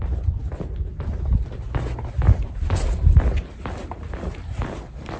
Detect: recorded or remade recorded